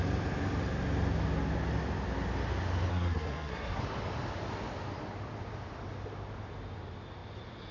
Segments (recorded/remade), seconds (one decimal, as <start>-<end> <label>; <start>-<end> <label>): 0.0-2.9 recorded; 2.9-3.8 remade; 3.8-7.7 recorded